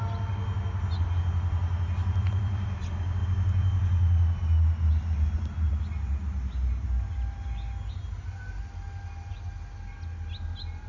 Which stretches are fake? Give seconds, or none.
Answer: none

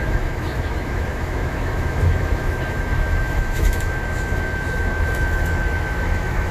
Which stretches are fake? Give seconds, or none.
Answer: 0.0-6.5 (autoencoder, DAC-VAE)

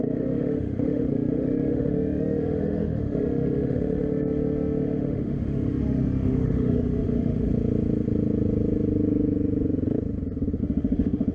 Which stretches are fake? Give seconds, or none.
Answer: 0.0-7.5 (autoencoder, DAC-VAE); 10.6-11.3

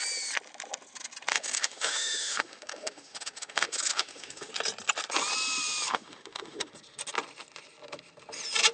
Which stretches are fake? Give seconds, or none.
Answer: 1.3-4.5 (autoencoder, DAC-VAE); 5.9-6.7

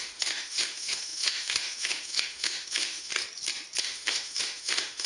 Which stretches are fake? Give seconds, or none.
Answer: 0.0-3.1 (autoencoder, DAC-VAE); 3.8-5.1

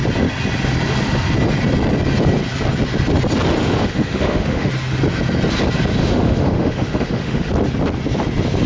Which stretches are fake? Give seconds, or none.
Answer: 3.6-4.7 (autoencoder, DAC-VAE); 6.0-7.5